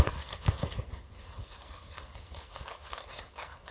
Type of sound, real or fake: fake